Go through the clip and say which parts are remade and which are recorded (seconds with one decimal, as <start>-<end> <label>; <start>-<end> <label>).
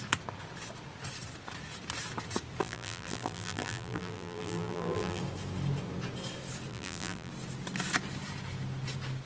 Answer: 0.0-2.6 recorded; 2.6-5.2 remade; 5.2-6.7 recorded; 6.7-7.3 remade; 7.3-9.3 recorded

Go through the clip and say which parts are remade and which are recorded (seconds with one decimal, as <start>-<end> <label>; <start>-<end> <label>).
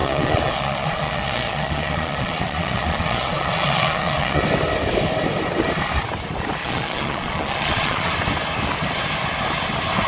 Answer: 0.0-4.4 remade; 4.4-6.6 recorded; 6.6-8.1 remade; 8.1-10.1 recorded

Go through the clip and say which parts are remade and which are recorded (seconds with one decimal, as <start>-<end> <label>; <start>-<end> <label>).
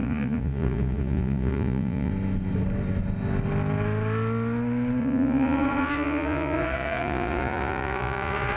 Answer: 0.0-2.1 remade; 2.1-5.0 recorded; 5.0-8.6 remade